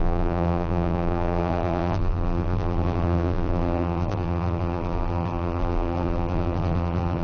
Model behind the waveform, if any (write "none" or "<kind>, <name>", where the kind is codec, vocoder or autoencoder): vocoder, BigVGAN v2